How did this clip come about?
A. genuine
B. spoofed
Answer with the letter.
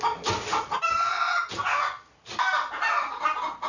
A